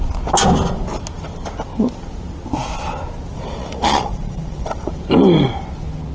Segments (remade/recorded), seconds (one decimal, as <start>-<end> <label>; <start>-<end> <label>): 0.0-3.3 recorded; 3.3-4.9 remade; 4.9-6.1 recorded

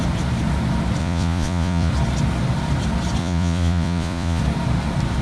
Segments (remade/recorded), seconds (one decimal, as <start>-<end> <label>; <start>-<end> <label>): 0.0-1.0 recorded; 1.0-1.9 remade; 1.9-3.2 recorded; 3.2-4.4 remade; 4.4-5.2 recorded

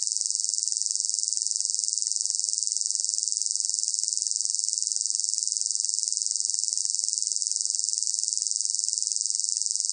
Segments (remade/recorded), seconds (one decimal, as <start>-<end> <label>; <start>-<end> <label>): 0.0-9.9 recorded

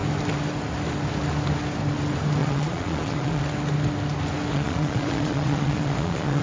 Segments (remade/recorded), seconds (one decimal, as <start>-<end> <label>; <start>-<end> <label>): 0.0-2.4 recorded; 2.4-3.4 remade; 3.4-4.5 recorded; 4.5-6.4 remade

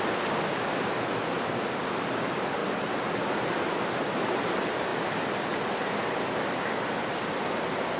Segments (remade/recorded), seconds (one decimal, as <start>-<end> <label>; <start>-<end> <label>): 0.0-8.0 recorded